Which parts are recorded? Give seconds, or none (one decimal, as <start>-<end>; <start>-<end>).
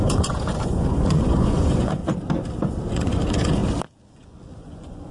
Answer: 2.0-2.9; 3.6-4.1